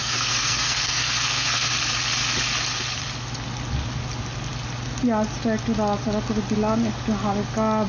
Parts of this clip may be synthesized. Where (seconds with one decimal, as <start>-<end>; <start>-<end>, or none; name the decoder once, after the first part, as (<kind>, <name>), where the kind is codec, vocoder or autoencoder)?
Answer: 0.0-1.7 (codec, SNAC)